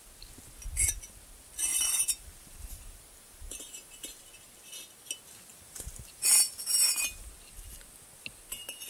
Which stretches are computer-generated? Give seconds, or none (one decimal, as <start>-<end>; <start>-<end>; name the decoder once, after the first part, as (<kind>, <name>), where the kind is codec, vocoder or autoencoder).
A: 1.7-4.2 (vocoder, BigVGAN v2); 5.5-7.3